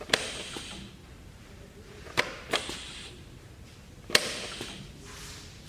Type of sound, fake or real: real